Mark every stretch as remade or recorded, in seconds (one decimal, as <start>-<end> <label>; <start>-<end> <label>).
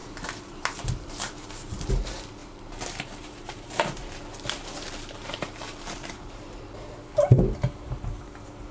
0.0-1.9 remade; 1.9-2.4 recorded; 2.4-6.6 remade; 6.6-8.7 recorded